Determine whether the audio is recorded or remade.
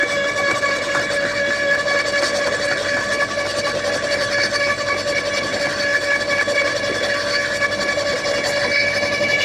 recorded